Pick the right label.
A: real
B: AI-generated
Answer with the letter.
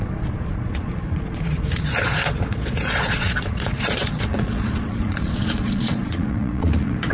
B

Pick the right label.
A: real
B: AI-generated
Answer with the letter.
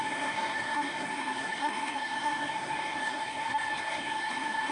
B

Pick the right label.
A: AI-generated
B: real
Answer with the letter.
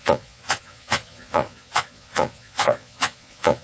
A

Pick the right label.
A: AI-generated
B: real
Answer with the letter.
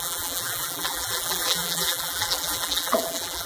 A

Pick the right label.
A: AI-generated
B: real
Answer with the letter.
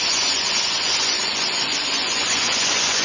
A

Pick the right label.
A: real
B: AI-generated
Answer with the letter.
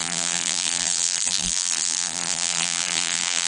B